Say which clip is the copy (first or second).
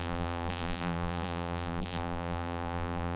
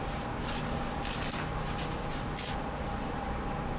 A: first